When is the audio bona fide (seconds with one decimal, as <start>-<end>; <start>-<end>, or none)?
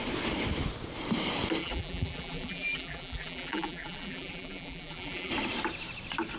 0.0-1.6; 5.3-6.4